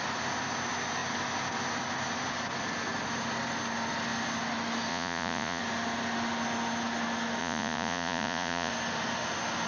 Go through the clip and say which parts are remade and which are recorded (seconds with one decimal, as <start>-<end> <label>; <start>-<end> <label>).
0.0-4.9 recorded; 4.9-5.6 remade; 5.6-7.4 recorded; 7.4-8.7 remade; 8.7-9.7 recorded